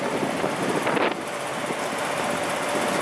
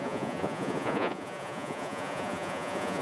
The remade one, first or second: second